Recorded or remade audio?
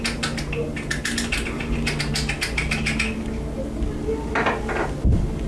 recorded